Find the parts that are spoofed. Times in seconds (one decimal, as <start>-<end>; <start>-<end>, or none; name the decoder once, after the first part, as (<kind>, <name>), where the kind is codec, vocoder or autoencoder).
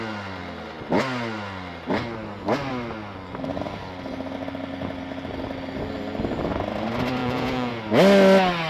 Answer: 7.2-7.8 (vocoder, Vocos)